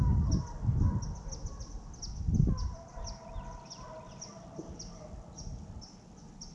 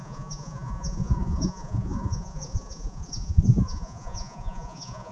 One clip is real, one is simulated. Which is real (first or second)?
first